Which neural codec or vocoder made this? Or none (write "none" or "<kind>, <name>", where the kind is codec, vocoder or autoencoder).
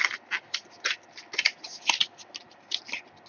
none